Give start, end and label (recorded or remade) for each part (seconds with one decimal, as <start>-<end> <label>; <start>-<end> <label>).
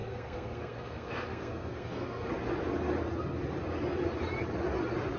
0.0-2.3 remade; 2.3-5.2 recorded